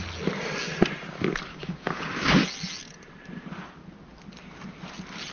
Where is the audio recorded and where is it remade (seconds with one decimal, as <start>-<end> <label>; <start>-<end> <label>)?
0.0-1.5 recorded; 1.5-2.3 remade; 2.3-5.3 recorded